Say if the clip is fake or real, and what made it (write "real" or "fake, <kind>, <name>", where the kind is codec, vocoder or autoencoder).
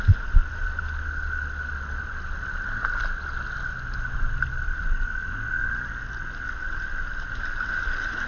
real